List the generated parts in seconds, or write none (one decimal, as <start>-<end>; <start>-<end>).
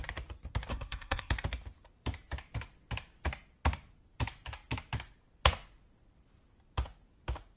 0.7-1.3